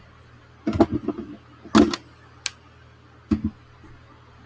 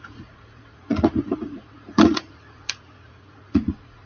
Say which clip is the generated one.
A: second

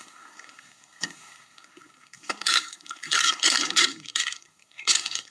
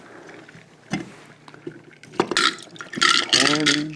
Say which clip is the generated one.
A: first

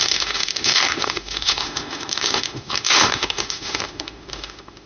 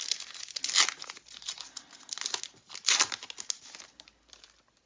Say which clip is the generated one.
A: first